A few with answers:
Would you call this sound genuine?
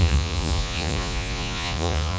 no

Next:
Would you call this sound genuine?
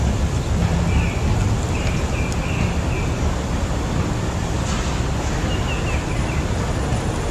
yes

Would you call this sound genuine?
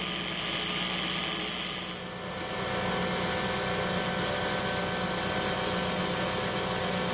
yes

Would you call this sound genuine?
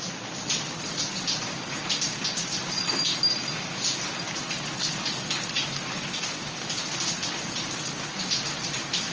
yes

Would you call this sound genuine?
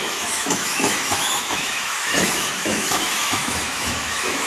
no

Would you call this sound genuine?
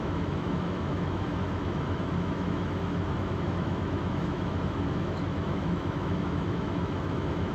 no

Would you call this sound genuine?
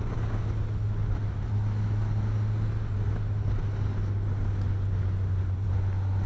yes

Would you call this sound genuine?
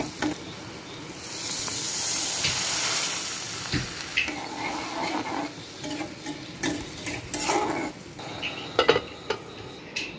yes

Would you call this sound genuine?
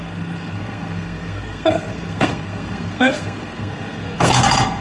no